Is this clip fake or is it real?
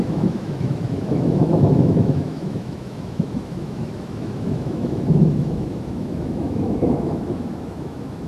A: fake